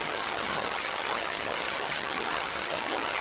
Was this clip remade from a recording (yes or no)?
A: yes